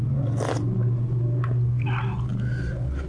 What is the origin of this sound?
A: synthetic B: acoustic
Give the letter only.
B